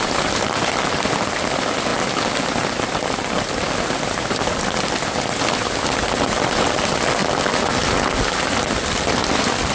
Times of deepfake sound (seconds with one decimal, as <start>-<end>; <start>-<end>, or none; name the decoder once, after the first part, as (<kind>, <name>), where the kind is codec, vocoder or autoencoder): none